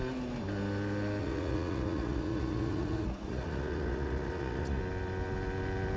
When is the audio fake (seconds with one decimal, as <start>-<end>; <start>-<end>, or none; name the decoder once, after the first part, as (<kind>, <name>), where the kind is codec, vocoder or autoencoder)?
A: 1.2-4.8 (vocoder, Vocos)